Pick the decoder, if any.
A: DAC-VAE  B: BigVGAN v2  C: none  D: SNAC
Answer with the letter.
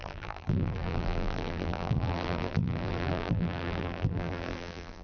B